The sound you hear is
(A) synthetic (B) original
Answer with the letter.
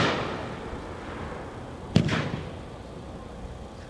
B